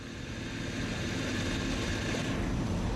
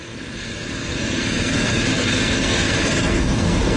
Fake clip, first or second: second